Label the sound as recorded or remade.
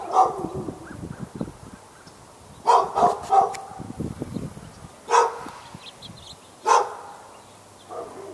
recorded